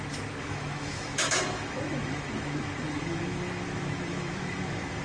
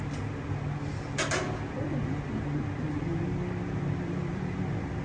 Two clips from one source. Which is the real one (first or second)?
second